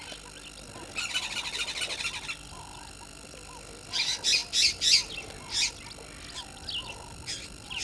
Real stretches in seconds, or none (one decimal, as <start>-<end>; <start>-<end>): 0.0-7.8